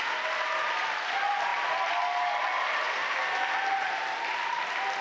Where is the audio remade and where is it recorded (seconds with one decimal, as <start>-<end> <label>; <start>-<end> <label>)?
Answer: 0.0-5.0 recorded